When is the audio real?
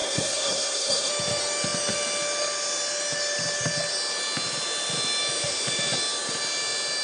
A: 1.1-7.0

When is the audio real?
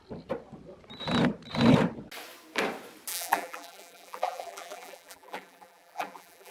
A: 0.0-3.1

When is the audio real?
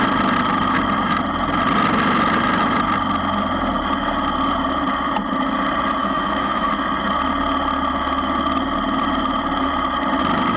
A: 0.0-6.0; 6.7-10.6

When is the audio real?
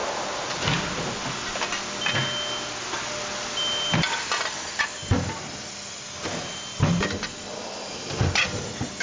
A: 0.0-9.0